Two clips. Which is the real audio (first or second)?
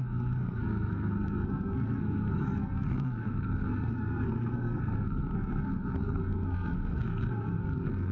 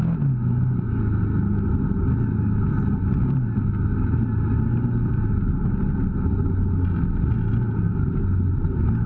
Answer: second